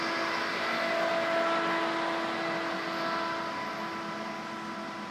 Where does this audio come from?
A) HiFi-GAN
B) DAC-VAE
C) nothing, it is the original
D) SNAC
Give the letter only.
C